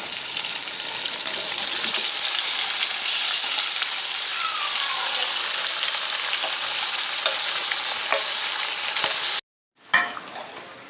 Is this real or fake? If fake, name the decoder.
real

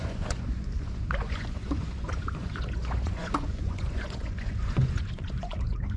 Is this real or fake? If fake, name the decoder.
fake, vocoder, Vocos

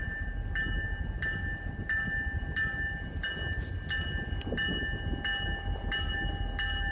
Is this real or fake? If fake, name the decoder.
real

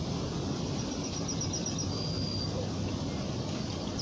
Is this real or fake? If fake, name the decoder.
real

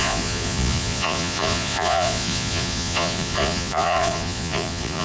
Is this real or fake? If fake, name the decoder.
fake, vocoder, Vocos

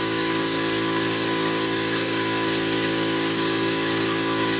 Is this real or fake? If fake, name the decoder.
fake, codec, DAC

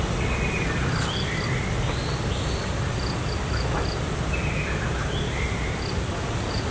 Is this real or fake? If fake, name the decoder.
real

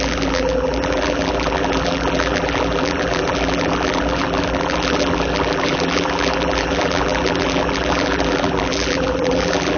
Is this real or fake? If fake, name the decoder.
fake, vocoder, BigVGAN v2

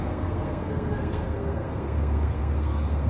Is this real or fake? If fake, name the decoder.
fake, codec, SNAC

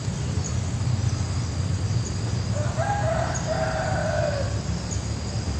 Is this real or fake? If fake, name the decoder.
real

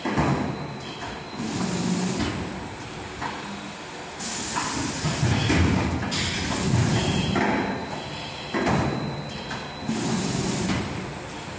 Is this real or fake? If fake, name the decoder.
real